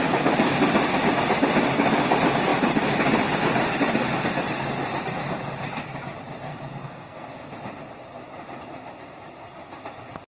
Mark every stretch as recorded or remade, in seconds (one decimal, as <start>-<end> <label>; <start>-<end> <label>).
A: 0.0-6.5 recorded; 6.5-7.5 remade; 7.5-10.3 recorded